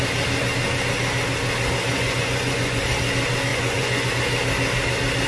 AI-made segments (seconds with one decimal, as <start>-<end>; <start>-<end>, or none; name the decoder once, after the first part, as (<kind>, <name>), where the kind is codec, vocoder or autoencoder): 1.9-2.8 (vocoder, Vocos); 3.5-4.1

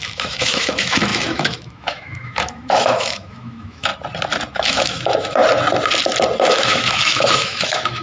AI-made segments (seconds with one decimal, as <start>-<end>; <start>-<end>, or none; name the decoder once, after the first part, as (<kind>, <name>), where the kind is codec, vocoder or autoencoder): 0.0-3.9 (autoencoder, DAC-VAE); 4.5-5.4; 6.5-8.0

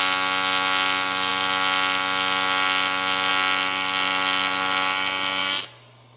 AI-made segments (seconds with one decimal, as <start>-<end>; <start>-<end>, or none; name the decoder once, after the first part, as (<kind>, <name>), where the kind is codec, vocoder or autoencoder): none

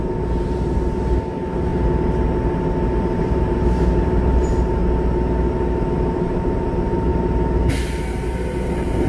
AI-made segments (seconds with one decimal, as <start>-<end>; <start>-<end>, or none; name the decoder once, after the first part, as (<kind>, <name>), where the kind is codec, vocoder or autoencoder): 0.0-1.7 (vocoder, BigVGAN v2); 3.0-4.8; 6.1-7.1; 7.7-9.1